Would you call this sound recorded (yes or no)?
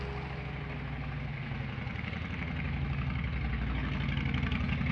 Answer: yes